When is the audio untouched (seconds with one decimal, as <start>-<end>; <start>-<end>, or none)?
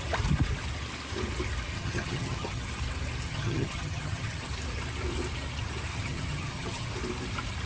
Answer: 0.0-1.7; 2.6-3.3; 4.5-5.9; 6.9-7.7